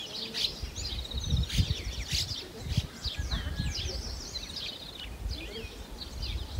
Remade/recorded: recorded